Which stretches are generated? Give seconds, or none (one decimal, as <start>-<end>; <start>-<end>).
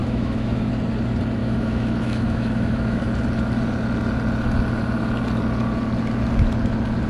0.0-0.7; 1.4-3.0